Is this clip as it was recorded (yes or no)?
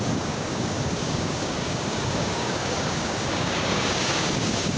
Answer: no